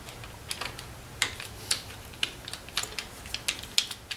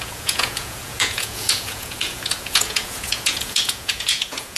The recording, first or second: first